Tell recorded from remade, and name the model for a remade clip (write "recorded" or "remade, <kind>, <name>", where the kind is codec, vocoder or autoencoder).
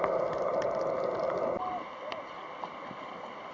recorded